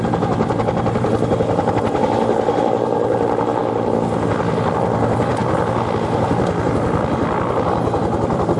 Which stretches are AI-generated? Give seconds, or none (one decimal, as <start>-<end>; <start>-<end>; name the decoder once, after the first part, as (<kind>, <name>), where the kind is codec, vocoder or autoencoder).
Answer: none